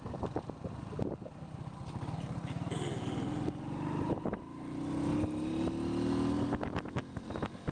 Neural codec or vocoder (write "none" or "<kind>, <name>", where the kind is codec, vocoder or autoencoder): none